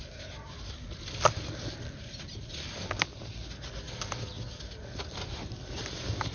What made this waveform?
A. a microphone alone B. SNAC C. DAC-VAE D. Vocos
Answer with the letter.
A